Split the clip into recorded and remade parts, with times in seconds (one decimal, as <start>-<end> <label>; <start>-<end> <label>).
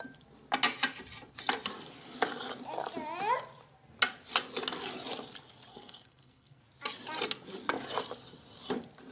0.0-5.7 recorded; 5.7-6.6 remade; 6.6-9.1 recorded